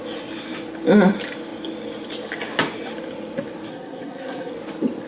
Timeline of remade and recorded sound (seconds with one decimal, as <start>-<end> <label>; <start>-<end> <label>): 0.0-3.7 recorded; 3.7-4.5 remade; 4.5-5.1 recorded